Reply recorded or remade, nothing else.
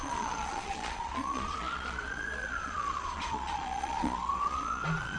remade